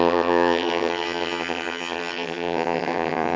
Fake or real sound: fake